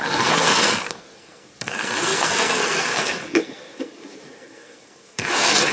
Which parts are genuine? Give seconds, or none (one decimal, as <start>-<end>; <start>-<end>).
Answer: none